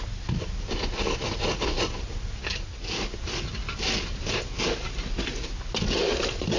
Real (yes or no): yes